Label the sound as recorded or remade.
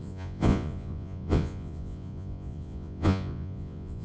remade